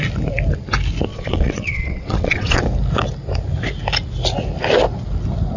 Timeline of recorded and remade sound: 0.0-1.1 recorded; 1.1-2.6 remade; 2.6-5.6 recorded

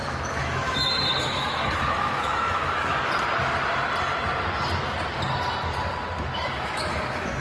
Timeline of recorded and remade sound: 0.0-2.9 remade; 2.9-6.2 recorded; 6.2-7.4 remade